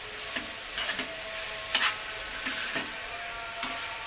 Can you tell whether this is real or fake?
real